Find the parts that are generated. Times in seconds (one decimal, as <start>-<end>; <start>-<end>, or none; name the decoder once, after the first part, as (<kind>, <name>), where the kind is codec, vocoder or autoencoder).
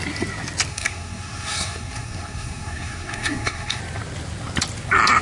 0.7-3.8 (codec, SNAC)